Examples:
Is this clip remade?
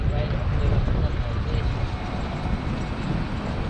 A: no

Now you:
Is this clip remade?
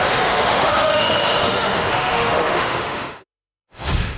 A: yes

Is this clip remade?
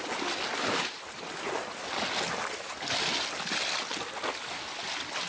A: no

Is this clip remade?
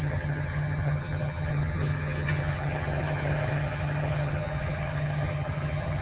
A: yes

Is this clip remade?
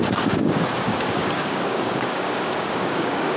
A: yes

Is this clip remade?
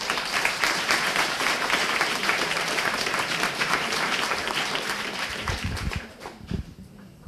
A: yes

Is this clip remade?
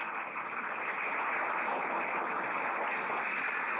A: no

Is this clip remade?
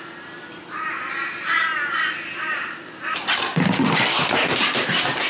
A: no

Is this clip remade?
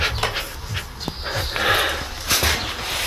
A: no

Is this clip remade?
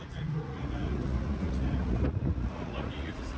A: yes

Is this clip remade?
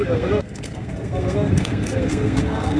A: yes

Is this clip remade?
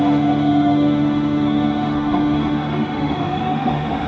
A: yes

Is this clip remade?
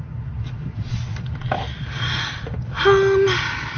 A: no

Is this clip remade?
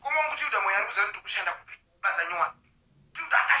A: no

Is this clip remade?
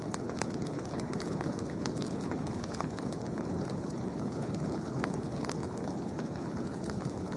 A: yes